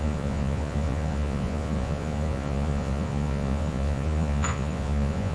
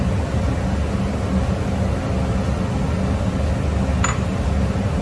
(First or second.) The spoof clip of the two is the first